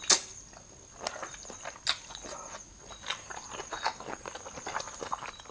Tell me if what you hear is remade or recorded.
recorded